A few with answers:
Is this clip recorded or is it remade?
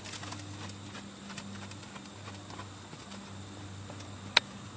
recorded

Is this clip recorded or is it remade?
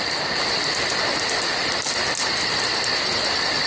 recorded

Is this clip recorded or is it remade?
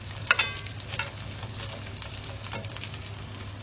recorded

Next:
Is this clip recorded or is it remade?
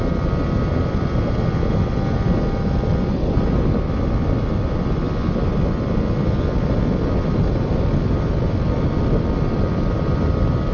recorded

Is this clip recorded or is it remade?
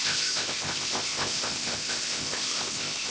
remade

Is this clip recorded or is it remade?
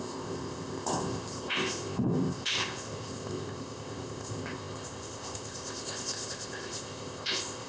remade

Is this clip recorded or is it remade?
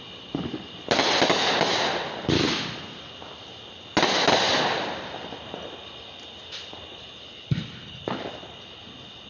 recorded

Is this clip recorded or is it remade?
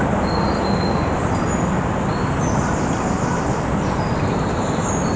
recorded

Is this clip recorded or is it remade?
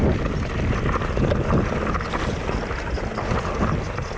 recorded